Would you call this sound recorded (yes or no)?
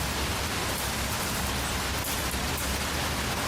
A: yes